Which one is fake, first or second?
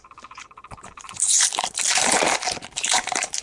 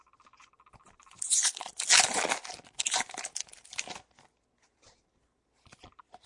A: first